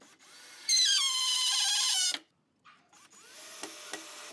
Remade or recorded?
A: recorded